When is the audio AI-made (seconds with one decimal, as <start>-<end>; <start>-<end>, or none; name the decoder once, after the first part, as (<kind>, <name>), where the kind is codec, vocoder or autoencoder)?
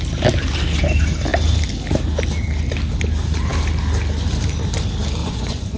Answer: 5.2-5.8 (vocoder, Vocos)